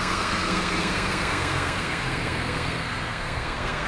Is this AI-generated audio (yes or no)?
yes